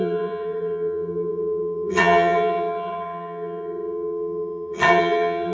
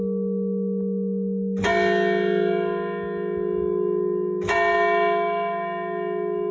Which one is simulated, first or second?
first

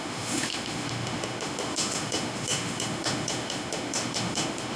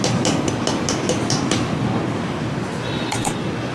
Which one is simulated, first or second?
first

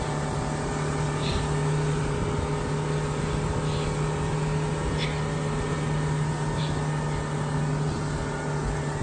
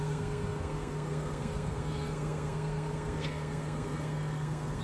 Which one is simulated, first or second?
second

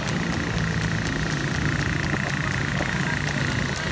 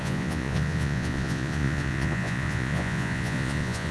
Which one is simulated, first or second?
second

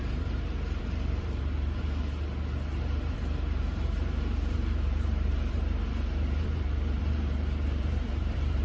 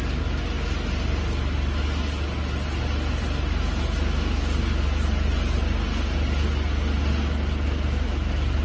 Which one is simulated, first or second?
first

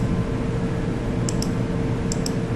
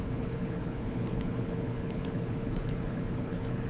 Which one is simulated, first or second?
second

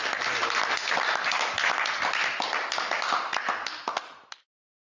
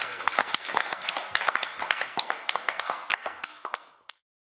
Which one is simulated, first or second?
second